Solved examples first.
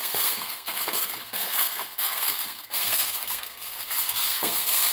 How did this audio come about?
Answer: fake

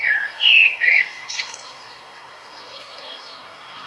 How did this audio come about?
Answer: fake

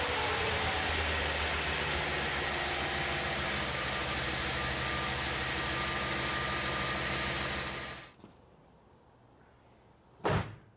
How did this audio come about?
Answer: real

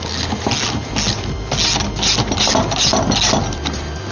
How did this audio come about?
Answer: real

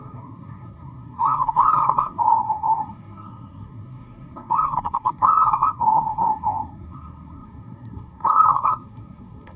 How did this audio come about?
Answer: fake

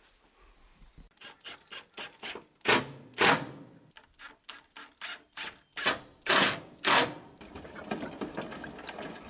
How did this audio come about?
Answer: real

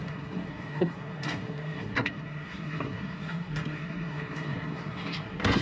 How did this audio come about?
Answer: fake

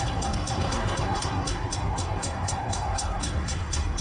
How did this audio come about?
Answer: fake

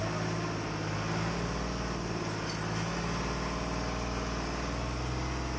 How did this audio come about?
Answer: real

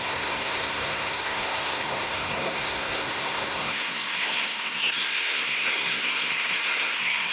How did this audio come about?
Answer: fake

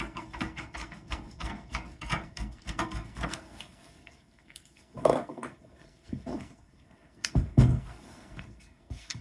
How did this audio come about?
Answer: fake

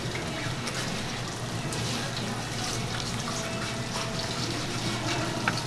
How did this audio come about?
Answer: real